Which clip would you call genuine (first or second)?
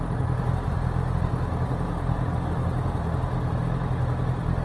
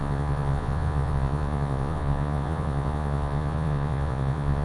first